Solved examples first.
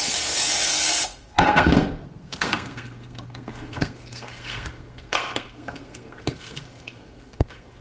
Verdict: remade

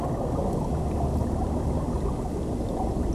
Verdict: recorded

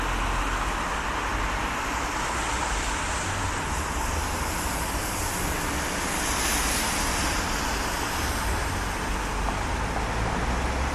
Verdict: recorded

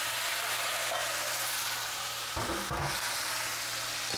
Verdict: recorded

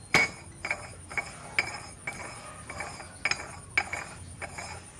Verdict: recorded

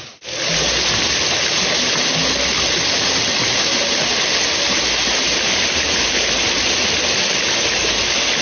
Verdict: recorded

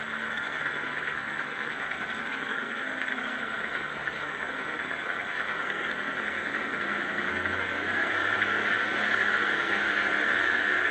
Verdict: remade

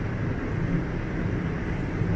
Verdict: recorded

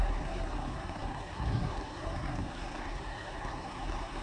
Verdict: remade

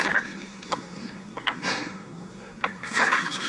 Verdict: remade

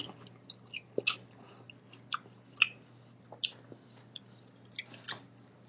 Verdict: recorded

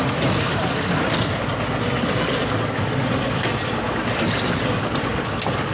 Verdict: recorded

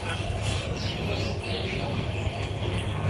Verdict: remade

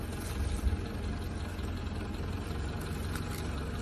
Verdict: recorded